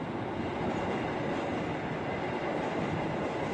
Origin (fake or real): real